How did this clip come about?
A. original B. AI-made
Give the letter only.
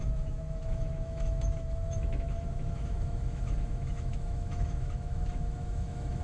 B